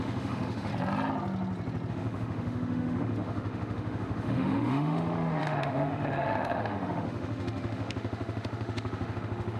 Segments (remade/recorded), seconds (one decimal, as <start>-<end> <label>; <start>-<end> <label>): 0.0-0.7 remade; 0.7-1.9 recorded; 1.9-9.6 remade